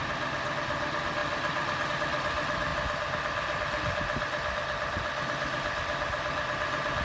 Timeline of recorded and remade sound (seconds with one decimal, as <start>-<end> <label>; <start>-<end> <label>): 0.0-7.0 recorded